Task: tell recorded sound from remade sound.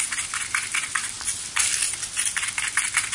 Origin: recorded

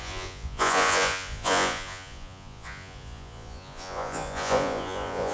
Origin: remade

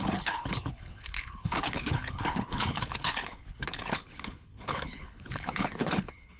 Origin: remade